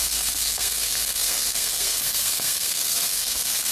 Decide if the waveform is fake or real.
fake